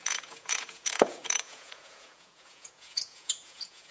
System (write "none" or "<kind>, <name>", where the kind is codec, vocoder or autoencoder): vocoder, Vocos